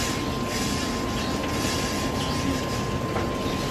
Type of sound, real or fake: real